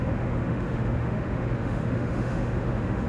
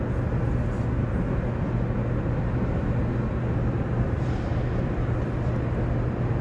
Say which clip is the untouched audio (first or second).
second